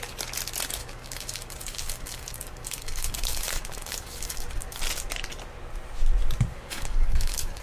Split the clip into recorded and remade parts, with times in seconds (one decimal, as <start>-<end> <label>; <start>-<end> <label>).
0.0-0.8 recorded; 0.8-4.8 remade; 4.8-6.5 recorded; 6.5-7.6 remade